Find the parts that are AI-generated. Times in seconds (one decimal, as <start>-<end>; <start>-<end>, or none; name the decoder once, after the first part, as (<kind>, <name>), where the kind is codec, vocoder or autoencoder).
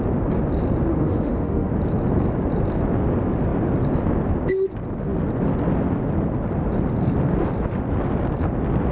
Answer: 0.9-1.7 (autoencoder, DAC-VAE)